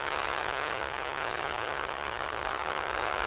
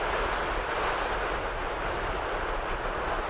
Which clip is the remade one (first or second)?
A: first